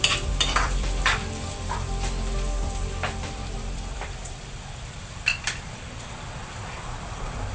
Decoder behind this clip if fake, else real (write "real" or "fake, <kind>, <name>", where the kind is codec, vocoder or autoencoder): fake, vocoder, BigVGAN v2